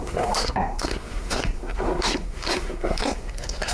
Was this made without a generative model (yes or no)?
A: no